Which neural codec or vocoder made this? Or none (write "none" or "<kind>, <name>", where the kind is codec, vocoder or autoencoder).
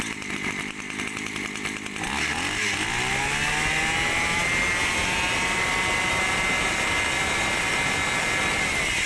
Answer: none